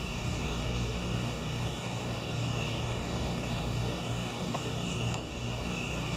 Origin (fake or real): fake